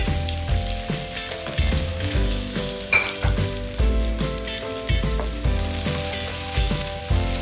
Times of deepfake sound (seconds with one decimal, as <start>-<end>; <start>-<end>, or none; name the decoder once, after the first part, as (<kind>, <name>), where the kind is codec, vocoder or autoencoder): 1.9-2.6 (autoencoder, DAC-VAE); 6.3-7.0